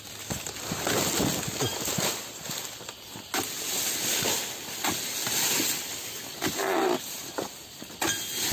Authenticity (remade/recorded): recorded